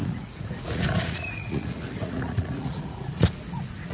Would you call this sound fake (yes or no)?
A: yes